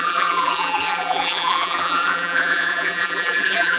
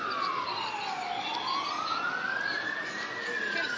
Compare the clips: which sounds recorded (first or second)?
second